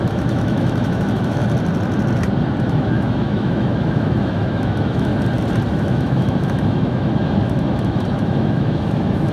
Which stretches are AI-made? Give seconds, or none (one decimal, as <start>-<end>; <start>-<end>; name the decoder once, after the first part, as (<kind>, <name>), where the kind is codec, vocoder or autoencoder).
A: 0.0-1.4 (autoencoder, DAC-VAE); 2.6-5.1; 5.7-9.3